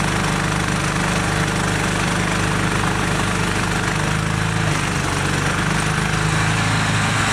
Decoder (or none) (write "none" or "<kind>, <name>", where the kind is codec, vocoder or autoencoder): none